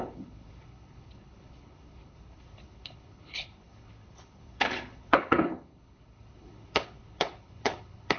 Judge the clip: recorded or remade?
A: remade